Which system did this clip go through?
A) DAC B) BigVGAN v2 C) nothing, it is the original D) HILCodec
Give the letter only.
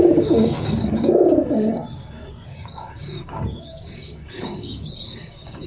A